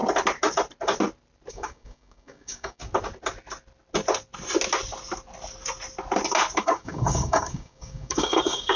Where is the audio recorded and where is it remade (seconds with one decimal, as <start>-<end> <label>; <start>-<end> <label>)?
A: 0.0-1.5 recorded; 1.5-2.8 remade; 2.8-6.6 recorded; 6.6-8.8 remade